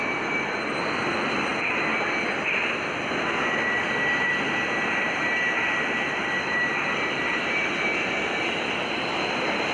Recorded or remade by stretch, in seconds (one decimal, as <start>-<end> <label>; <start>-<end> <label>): 0.0-1.5 remade; 1.5-4.1 recorded; 4.1-9.7 remade